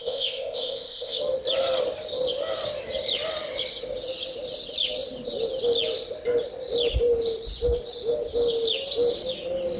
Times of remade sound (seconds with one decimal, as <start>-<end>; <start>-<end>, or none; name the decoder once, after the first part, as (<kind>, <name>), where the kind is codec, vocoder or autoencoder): 0.0-1.2 (codec, ZipCodec)